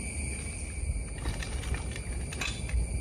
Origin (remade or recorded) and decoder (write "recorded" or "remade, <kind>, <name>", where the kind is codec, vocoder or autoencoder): recorded